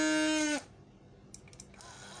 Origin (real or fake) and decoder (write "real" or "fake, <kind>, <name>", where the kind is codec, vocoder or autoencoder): real